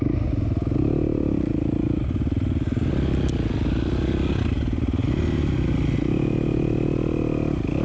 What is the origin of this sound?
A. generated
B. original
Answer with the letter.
B